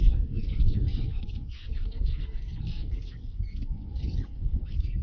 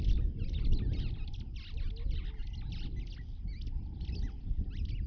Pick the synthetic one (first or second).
first